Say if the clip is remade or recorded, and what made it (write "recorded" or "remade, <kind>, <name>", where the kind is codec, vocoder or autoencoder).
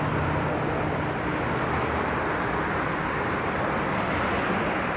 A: recorded